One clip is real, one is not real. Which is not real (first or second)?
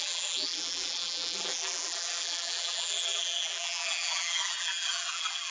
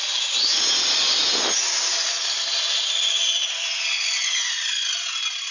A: first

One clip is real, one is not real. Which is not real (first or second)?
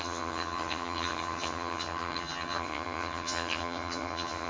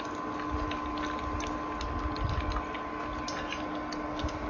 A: first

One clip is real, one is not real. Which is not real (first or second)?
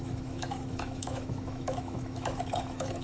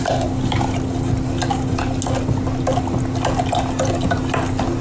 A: first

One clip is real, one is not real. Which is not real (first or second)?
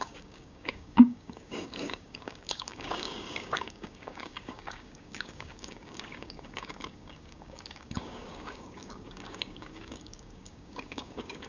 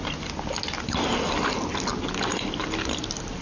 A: first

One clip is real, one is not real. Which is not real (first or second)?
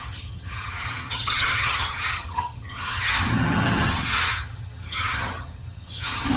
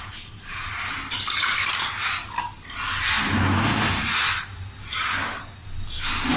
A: first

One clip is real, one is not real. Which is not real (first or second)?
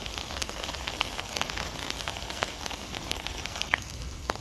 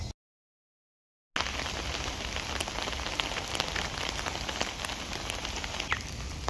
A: first